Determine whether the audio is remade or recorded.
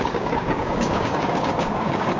remade